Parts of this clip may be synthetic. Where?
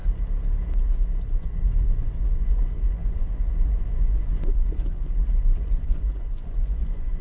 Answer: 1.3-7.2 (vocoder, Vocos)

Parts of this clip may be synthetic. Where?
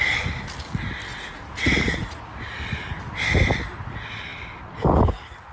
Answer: 1.1-2.2 (vocoder, Vocos)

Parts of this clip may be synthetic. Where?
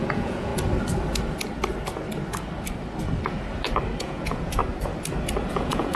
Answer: 0.0-0.5 (vocoder, Vocos); 4.0-4.6; 5.5-5.9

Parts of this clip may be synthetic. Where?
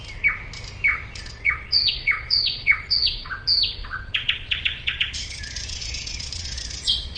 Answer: 0.9-3.3 (vocoder, Vocos); 3.8-7.2